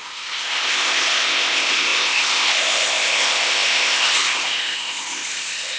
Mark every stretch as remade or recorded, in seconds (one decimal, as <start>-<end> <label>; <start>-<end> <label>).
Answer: 0.0-5.8 remade